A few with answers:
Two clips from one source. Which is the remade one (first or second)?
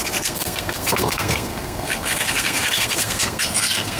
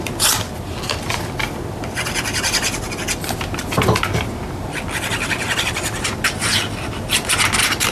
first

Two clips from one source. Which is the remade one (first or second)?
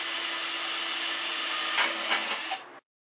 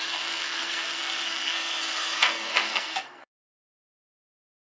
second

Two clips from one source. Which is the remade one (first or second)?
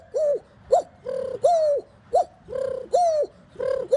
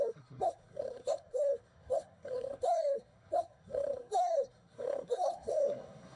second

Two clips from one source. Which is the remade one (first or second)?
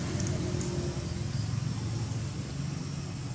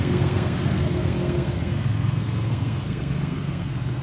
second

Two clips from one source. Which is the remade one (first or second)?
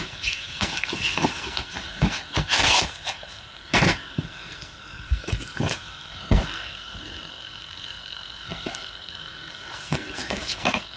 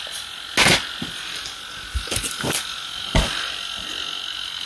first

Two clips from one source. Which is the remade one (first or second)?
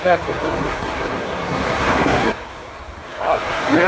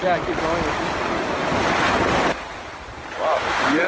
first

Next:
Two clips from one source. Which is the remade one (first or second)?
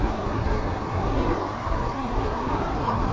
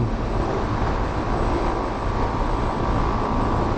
first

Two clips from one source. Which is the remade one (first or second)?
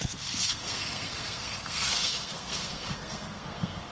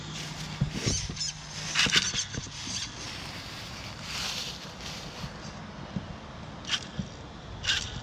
first